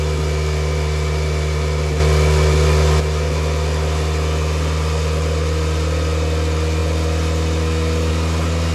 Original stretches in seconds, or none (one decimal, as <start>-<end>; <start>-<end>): 0.0-8.7